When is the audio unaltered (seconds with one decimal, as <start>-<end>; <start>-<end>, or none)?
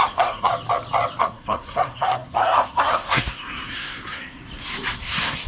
0.5-1.2; 4.4-5.0